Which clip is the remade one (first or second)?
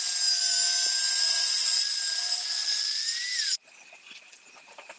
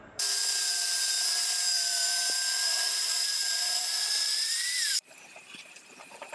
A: second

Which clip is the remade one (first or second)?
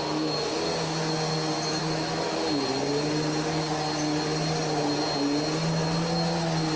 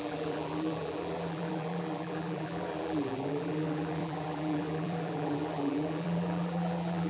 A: second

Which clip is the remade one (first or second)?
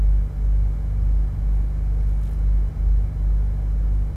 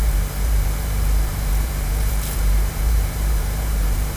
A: second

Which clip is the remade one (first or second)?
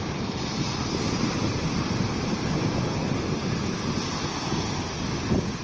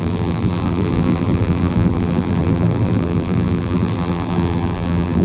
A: second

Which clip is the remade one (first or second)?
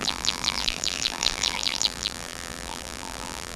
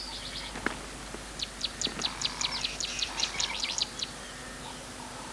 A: first